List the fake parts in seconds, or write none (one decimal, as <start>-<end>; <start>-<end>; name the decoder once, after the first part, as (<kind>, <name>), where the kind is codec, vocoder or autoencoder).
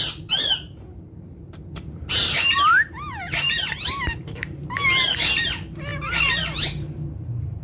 0.9-5.5 (vocoder, BigVGAN v2); 5.9-7.6